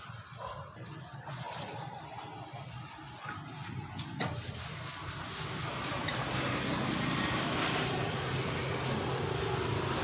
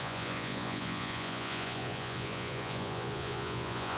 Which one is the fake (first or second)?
second